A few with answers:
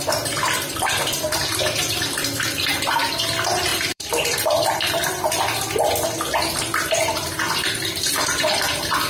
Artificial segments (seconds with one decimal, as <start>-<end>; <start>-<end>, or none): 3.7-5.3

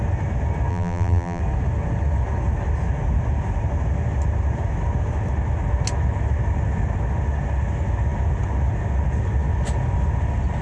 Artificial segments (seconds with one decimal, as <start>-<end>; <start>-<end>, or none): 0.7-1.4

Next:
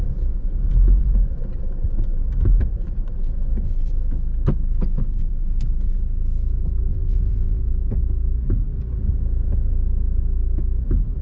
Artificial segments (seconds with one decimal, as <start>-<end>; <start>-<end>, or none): 6.9-7.6